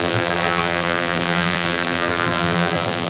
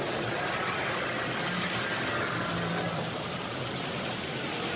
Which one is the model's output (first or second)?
first